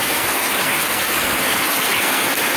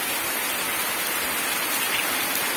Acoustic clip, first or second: second